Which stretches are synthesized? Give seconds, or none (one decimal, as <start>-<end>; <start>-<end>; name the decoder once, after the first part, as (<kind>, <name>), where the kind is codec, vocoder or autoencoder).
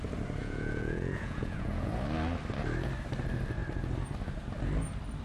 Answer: 0.4-1.9 (vocoder, Vocos)